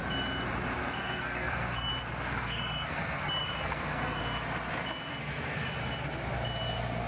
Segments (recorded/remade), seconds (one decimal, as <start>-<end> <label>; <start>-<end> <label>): 0.0-0.8 recorded; 0.8-1.9 remade; 1.9-2.3 recorded; 2.3-4.2 remade; 4.2-7.1 recorded